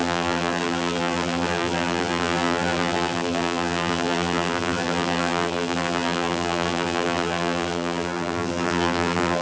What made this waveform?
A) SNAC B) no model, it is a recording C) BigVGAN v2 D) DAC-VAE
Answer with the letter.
C